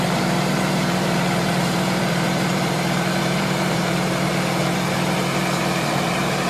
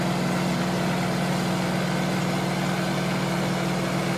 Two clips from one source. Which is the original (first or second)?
second